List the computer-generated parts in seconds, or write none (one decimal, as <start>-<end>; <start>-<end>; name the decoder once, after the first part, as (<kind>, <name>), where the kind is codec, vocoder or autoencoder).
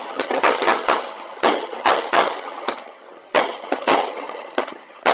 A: 0.0-5.1 (vocoder, HiFi-GAN)